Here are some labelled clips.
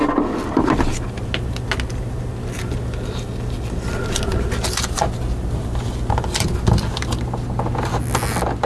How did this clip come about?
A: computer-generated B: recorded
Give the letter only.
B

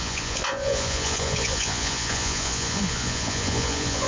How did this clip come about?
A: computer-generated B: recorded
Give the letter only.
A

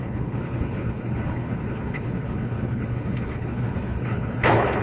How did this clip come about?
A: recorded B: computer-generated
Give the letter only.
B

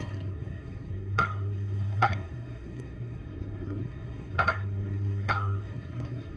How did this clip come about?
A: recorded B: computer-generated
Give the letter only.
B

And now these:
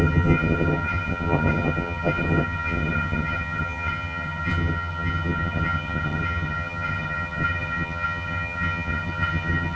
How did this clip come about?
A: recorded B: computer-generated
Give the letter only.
B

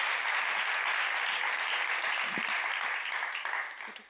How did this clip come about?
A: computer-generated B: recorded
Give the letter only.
B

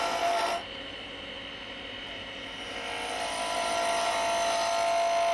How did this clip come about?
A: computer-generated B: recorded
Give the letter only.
B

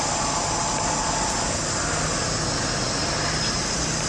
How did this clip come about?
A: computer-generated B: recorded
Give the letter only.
B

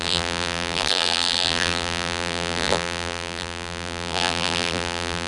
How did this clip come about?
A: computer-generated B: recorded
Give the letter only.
A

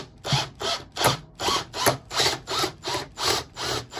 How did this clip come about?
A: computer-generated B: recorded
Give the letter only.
B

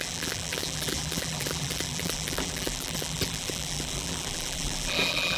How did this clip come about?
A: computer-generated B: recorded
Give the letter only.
A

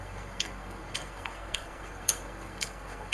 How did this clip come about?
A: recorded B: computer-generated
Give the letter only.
B